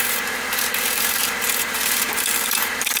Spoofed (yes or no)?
yes